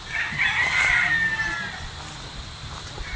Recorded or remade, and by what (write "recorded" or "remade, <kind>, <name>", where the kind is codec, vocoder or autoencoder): recorded